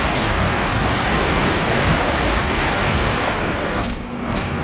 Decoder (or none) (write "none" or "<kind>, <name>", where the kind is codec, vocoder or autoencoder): codec, DAC